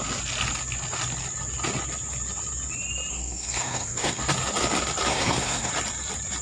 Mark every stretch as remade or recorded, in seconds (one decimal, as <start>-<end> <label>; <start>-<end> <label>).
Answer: 0.0-3.1 recorded; 3.1-4.2 remade; 4.2-5.1 recorded; 5.1-5.7 remade; 5.7-6.4 recorded